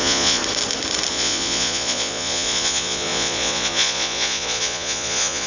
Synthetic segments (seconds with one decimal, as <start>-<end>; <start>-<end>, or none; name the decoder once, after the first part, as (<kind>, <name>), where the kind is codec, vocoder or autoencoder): 0.0-0.4 (vocoder, Vocos); 1.1-5.5